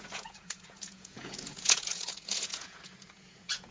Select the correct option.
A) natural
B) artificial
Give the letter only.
B